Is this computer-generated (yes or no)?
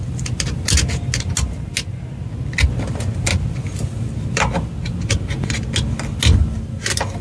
no